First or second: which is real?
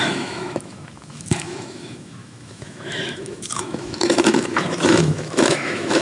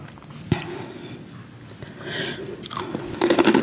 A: second